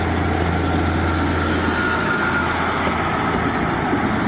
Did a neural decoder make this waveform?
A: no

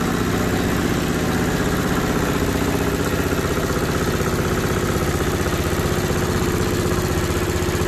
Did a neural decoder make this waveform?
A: no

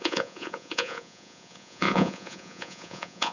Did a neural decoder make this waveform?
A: yes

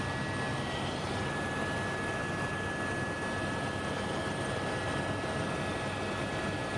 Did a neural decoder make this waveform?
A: no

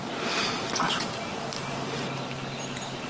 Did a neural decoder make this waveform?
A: no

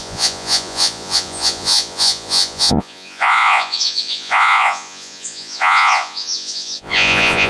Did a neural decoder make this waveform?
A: yes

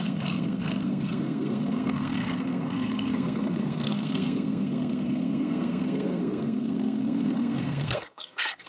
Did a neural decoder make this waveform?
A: yes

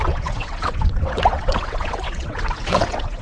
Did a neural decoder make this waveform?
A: yes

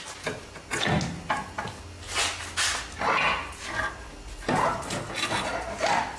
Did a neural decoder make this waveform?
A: no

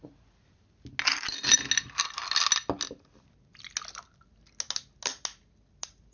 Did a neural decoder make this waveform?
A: no